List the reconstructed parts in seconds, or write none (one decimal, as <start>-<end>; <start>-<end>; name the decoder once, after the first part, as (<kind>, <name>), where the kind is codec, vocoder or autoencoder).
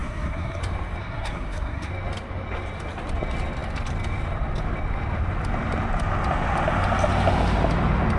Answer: 0.0-0.6 (codec, SNAC); 1.0-1.9